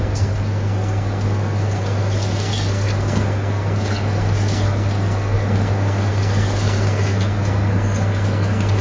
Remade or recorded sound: remade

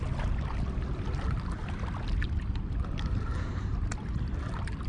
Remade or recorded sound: recorded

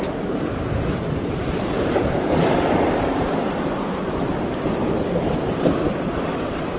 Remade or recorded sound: remade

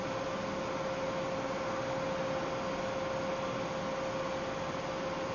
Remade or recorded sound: recorded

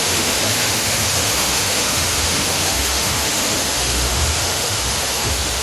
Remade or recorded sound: remade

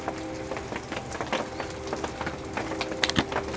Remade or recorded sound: recorded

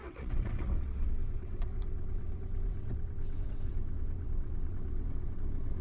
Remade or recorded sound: remade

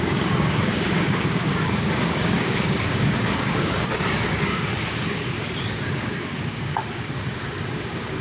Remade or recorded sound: remade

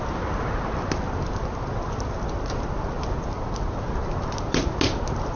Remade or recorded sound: recorded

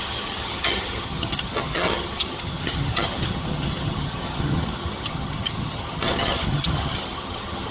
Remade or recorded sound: remade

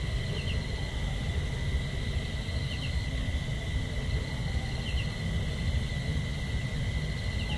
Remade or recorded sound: recorded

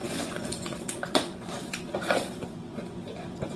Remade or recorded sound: remade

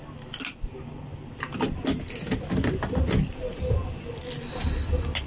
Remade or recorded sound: recorded